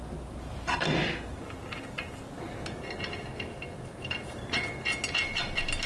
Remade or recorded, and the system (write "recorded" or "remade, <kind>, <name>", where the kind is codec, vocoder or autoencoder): recorded